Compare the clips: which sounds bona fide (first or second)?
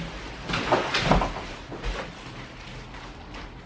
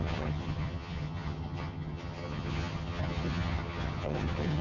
first